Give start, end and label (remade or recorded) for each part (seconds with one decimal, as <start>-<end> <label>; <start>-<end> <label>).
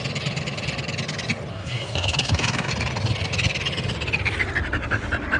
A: 0.0-1.5 recorded; 1.5-2.7 remade; 2.7-5.4 recorded